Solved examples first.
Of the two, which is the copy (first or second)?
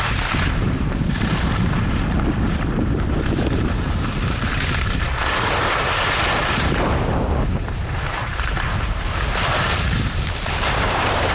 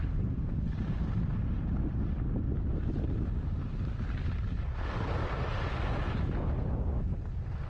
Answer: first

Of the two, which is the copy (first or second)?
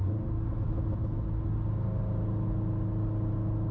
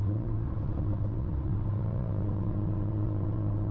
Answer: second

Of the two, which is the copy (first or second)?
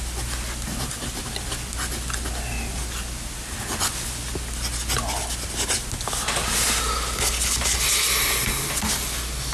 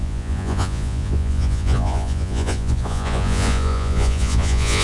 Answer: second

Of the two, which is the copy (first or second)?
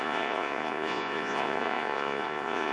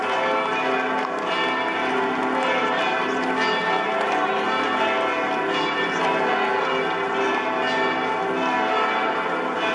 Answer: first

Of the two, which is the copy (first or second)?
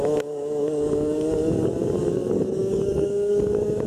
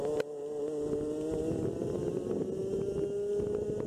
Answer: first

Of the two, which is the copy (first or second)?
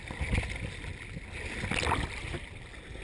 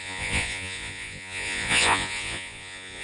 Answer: second